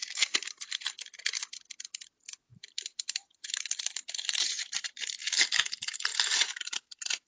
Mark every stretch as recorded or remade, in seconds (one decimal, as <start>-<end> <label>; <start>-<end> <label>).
0.0-0.7 remade; 0.7-2.5 recorded; 2.5-5.2 remade; 5.2-6.1 recorded; 6.1-7.3 remade